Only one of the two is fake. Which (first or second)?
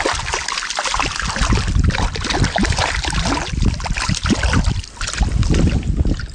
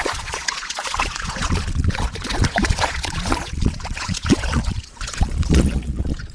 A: second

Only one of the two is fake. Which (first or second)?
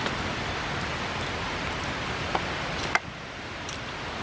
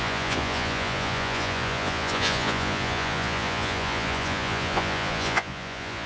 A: second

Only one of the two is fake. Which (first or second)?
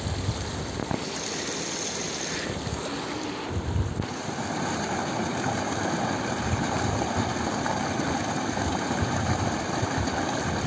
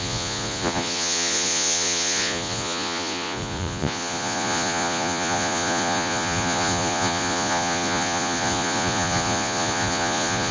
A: second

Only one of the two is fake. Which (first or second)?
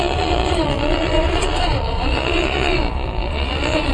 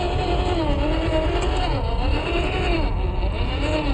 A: first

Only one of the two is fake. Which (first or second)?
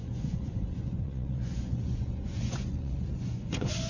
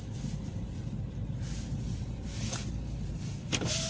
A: first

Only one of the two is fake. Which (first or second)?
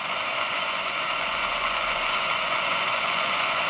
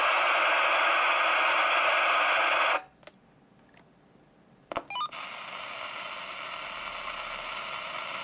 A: first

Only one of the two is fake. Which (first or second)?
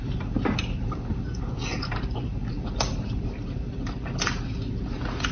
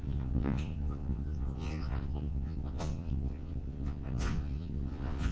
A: second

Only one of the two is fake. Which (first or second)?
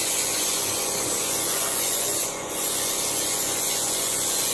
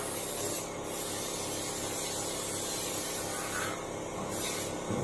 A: first